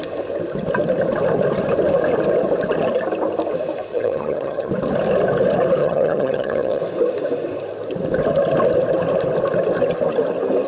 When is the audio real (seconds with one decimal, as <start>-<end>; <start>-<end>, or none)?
0.0-3.9; 4.7-5.8; 6.8-10.7